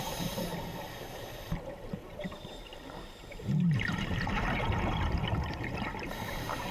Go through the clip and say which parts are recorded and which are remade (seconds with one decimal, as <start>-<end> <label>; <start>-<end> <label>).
0.0-2.7 remade; 2.7-3.2 recorded; 3.2-6.7 remade